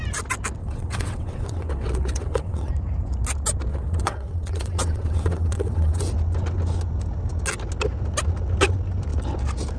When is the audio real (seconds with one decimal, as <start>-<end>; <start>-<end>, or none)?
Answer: 0.0-0.6; 2.7-3.7; 6.1-9.8

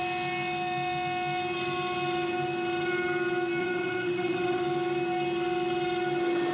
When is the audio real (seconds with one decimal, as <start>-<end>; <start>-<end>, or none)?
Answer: 0.0-3.6; 4.6-6.5

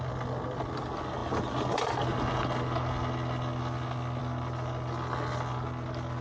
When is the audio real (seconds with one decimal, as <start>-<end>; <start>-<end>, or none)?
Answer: 0.0-6.2

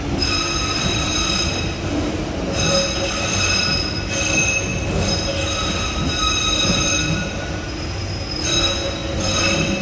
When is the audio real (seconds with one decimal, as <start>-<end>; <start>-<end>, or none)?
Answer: 0.0-9.8